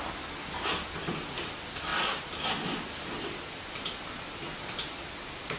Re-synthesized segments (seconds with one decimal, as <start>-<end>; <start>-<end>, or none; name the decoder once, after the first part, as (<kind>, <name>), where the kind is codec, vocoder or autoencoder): none

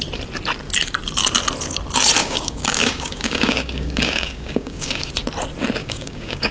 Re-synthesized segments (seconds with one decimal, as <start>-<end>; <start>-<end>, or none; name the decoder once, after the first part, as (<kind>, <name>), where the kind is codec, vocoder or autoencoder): 2.2-5.1 (codec, DAC); 5.8-6.5

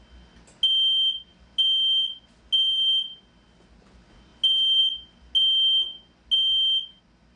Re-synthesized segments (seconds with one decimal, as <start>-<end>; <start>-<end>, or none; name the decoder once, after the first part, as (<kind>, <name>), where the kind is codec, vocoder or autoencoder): none

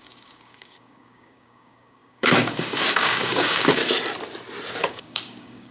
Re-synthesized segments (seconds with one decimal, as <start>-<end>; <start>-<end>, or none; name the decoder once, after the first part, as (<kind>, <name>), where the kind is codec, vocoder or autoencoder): 0.0-3.8 (codec, DAC); 4.7-5.7

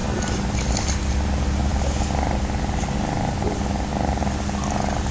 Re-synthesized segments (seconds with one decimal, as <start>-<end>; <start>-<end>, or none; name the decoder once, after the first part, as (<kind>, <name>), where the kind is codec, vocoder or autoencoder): none

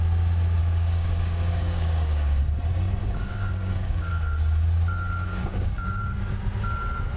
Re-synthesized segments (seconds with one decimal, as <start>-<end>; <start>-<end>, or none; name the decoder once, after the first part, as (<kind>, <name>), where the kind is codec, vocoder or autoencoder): 0.6-2.4 (codec, DAC); 3.0-4.1; 5.3-6.0

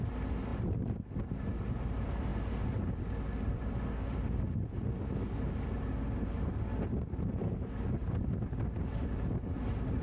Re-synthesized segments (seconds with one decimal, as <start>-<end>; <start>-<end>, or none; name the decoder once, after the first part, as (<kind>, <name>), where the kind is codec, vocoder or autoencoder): none

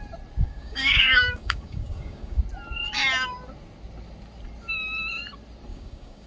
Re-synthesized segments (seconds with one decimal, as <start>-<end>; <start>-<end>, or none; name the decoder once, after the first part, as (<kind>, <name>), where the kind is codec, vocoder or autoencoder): 0.4-2.4 (codec, DAC); 5.7-6.3